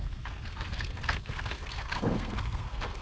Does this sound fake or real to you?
fake